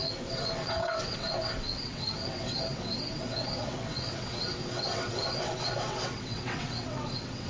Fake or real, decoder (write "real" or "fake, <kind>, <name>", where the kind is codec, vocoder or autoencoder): fake, vocoder, WaveNeXt